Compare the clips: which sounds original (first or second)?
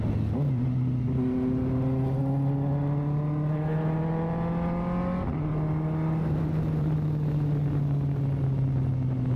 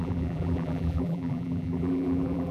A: first